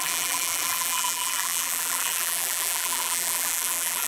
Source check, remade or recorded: remade